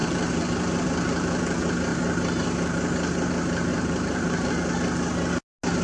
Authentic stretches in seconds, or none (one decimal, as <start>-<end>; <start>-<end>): 1.4-3.7; 4.5-5.8